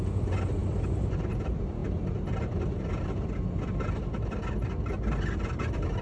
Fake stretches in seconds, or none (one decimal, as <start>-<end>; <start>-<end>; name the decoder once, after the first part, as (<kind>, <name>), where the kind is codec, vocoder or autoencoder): none